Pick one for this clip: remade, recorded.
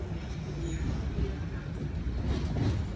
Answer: recorded